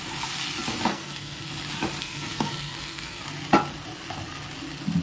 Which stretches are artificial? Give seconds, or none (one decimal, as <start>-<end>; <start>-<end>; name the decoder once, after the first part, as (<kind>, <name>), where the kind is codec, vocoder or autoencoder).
0.9-1.5 (codec, SNAC); 2.0-3.2